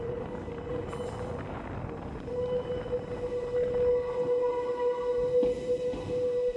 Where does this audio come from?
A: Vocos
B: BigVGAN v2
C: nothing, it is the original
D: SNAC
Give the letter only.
C